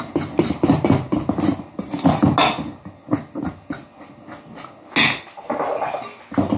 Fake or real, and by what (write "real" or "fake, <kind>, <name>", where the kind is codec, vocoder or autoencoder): real